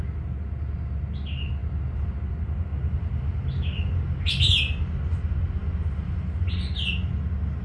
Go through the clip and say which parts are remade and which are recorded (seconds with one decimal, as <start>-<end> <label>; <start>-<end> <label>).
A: 0.0-7.6 recorded